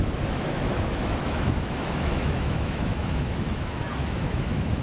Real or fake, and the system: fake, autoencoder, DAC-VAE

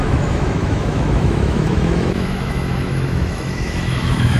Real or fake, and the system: fake, autoencoder, DAC-VAE